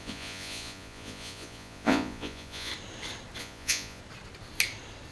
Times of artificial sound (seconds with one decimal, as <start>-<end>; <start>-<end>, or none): 0.0-2.7; 3.4-4.0